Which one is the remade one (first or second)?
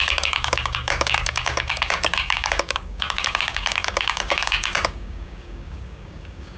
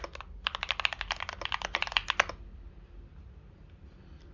first